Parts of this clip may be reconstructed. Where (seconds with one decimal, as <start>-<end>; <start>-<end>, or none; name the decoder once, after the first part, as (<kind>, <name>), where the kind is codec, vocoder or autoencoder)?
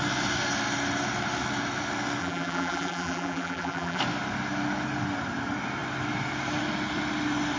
2.2-4.0 (vocoder, BigVGAN v2)